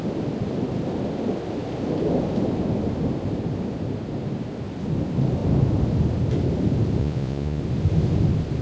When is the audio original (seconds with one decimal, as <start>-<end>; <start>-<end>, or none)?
0.0-7.0; 7.6-8.6